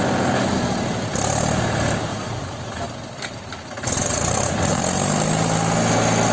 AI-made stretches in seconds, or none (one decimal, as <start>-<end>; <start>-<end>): 2.1-2.8; 3.6-4.8